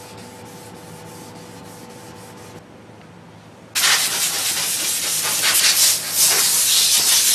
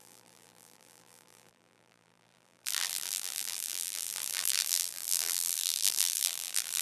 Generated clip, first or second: second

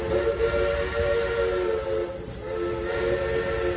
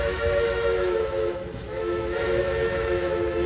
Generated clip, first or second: second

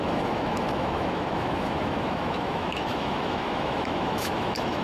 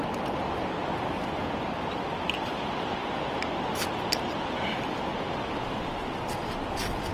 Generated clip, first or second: first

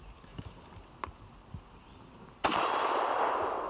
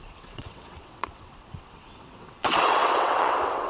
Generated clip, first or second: second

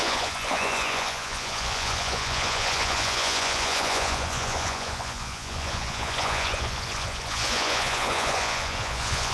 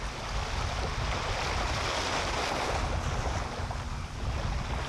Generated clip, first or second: first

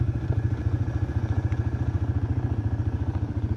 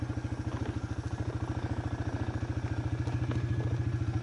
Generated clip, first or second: first